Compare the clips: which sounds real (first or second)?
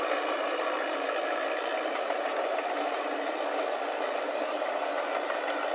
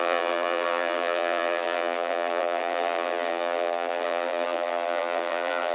first